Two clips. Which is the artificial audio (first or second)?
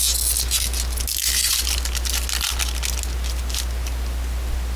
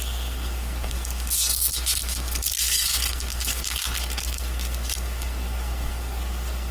second